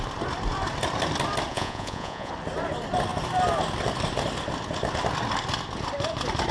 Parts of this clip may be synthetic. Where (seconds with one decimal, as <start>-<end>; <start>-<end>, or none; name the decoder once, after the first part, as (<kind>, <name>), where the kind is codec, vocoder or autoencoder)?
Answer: 1.5-2.3 (vocoder, Vocos)